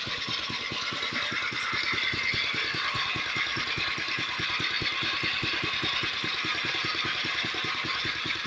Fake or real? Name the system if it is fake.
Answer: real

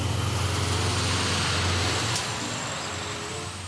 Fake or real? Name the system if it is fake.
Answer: real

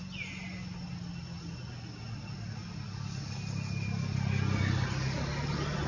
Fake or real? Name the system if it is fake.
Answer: real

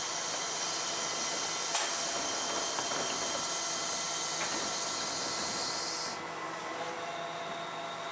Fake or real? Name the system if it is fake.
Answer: real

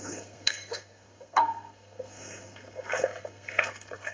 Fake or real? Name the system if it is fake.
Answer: fake, codec, SNAC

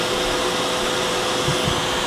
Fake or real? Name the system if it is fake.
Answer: real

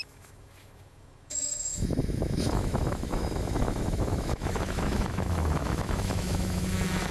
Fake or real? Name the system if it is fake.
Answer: fake, autoencoder, DAC-VAE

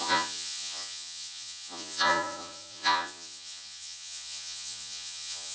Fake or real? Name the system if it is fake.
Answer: fake, vocoder, Vocos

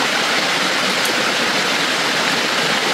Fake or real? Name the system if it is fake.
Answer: real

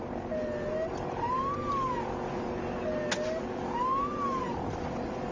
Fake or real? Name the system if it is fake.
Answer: real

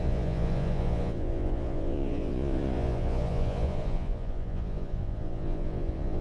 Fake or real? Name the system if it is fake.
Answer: fake, vocoder, Vocos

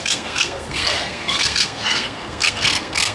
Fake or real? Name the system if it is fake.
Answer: fake, codec, SNAC